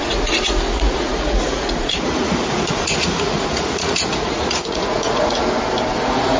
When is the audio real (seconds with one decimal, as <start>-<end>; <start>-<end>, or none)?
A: 5.4-6.0